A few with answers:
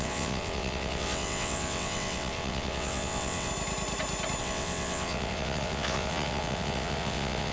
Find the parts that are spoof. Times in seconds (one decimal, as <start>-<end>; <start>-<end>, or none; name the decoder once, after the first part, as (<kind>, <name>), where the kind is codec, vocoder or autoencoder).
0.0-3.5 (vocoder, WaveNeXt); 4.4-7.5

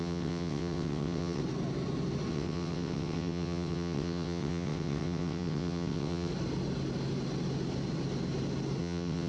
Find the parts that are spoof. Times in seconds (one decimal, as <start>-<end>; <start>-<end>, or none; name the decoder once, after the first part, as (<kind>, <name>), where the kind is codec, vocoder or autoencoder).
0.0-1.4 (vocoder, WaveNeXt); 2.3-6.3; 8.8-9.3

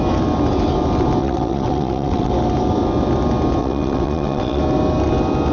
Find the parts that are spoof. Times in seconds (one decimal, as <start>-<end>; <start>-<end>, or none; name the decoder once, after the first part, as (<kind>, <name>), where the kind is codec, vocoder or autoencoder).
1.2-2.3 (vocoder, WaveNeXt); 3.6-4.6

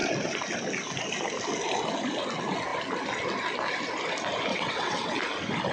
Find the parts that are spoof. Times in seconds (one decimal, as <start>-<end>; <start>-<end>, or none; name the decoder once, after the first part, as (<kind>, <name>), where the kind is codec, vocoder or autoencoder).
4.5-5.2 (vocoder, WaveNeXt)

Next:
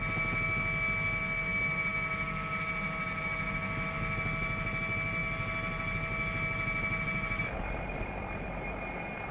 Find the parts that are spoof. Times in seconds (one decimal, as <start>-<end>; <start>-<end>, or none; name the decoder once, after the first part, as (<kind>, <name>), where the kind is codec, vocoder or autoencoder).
none

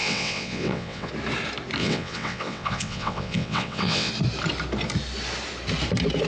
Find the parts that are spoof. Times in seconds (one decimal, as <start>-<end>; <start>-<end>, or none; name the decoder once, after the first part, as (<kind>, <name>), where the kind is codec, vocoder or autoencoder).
0.0-1.1 (vocoder, WaveNeXt); 1.8-4.1